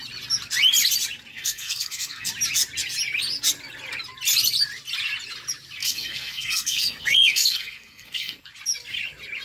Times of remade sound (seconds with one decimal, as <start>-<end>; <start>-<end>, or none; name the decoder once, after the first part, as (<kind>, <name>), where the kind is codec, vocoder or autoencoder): 1.3-2.3 (codec, SNAC); 5.8-8.5